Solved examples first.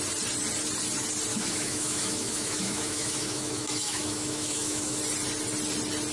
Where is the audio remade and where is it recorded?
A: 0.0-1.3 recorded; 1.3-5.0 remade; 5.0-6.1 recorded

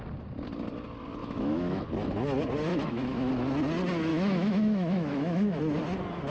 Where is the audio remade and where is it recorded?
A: 0.0-1.2 recorded; 1.2-1.8 remade; 1.8-2.7 recorded; 2.7-3.3 remade; 3.3-4.1 recorded; 4.1-5.6 remade; 5.6-6.3 recorded

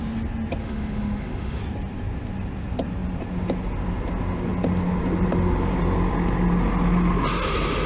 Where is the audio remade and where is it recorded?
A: 0.0-0.6 recorded; 0.6-1.6 remade; 1.6-7.9 recorded

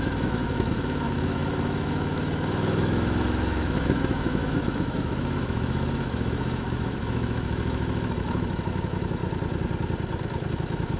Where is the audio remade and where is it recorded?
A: 0.0-9.2 remade; 9.2-10.5 recorded; 10.5-11.0 remade

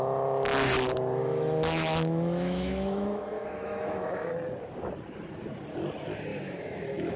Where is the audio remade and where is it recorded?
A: 0.0-1.2 recorded; 1.2-4.3 remade; 4.3-6.3 recorded; 6.3-7.2 remade